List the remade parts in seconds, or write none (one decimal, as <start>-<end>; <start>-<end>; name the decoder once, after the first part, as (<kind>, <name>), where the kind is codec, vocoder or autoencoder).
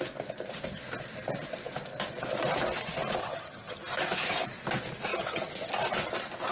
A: 3.2-3.8 (vocoder, HiFi-GAN); 5.1-5.7